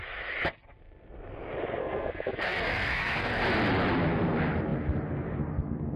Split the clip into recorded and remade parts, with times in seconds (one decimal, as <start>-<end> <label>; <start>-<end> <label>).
0.0-1.8 recorded; 1.8-3.4 remade; 3.4-6.0 recorded